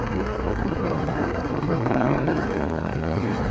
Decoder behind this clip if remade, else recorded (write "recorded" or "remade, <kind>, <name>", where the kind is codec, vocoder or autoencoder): remade, codec, SNAC